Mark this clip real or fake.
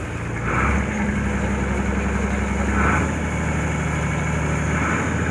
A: real